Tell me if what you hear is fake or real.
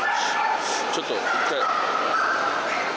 real